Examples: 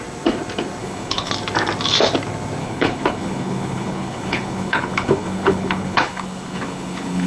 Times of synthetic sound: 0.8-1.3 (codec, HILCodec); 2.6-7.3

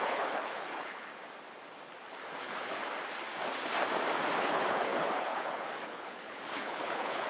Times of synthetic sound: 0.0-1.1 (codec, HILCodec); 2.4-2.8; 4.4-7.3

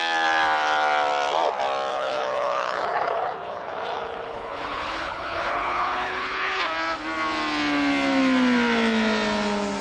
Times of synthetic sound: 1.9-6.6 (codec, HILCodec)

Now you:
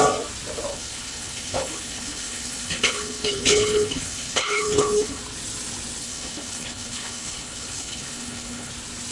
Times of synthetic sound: 0.7-5.2 (codec, HILCodec); 6.0-8.7

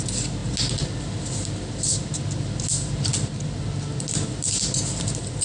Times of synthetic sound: none